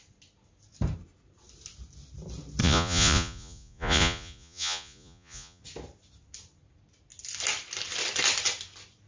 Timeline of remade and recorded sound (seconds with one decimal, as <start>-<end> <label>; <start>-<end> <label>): 0.0-2.6 recorded; 2.6-5.6 remade; 5.6-9.1 recorded